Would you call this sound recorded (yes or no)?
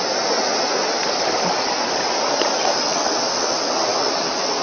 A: yes